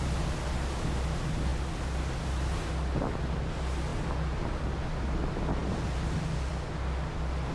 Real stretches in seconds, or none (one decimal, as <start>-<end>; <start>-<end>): 0.0-7.5